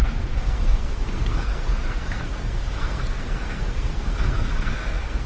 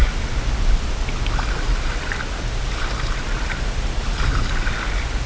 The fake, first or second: first